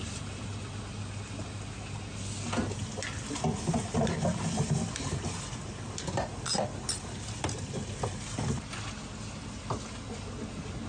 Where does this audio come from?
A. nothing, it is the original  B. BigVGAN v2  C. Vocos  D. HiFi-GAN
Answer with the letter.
A